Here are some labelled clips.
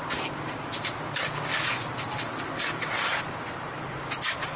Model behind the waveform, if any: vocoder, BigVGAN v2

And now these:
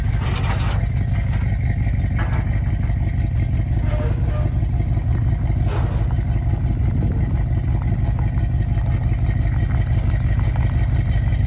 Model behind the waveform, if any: none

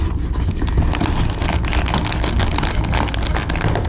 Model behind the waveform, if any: none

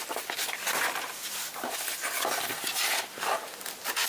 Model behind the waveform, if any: none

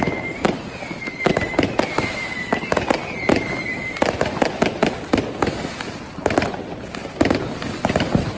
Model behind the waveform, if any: none